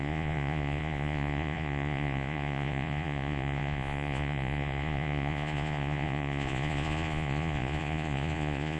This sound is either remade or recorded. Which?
remade